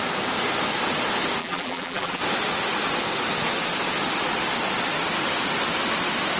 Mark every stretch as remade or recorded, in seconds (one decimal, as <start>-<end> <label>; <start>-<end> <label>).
0.0-1.4 recorded; 1.4-2.2 remade; 2.2-6.4 recorded